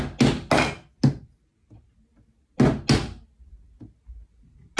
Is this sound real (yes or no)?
yes